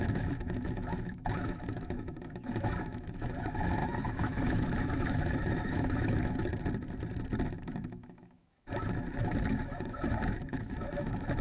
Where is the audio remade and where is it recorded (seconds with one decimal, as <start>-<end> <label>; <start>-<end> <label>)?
0.0-6.4 remade; 6.4-7.5 recorded; 7.5-11.4 remade